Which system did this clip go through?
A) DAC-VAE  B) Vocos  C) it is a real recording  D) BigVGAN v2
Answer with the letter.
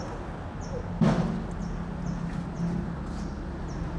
C